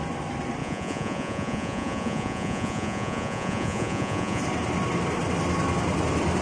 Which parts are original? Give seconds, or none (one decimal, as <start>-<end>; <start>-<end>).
0.0-0.6; 4.4-6.4